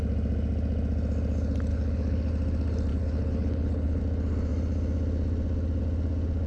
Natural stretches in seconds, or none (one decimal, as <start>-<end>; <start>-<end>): 0.0-1.7; 2.3-2.9; 4.0-6.5